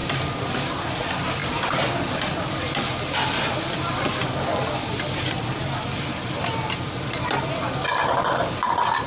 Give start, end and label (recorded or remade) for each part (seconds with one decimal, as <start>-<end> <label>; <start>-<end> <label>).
0.0-9.1 recorded